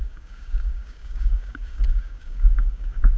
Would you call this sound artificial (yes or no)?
yes